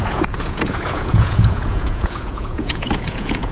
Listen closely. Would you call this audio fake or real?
fake